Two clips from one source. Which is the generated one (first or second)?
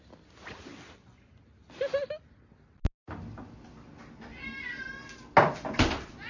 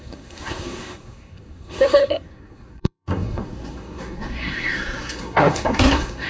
second